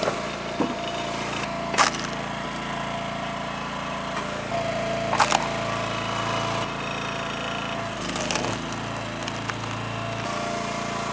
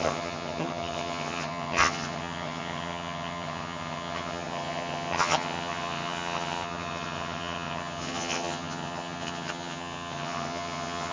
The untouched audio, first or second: first